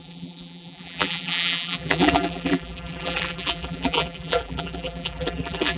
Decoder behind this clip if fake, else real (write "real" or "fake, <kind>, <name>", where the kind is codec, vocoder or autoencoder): fake, vocoder, BigVGAN v2